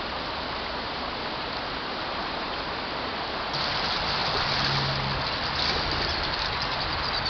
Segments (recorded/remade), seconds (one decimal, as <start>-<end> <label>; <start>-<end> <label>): 0.0-7.3 remade